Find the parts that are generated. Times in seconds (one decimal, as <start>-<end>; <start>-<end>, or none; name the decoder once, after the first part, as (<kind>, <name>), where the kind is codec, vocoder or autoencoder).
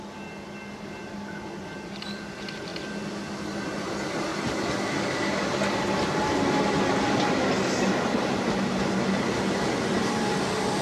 none